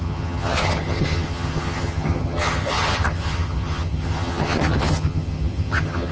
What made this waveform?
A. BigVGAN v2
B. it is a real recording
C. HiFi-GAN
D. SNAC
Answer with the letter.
C